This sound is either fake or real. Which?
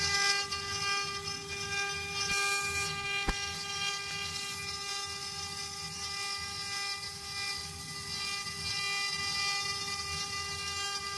real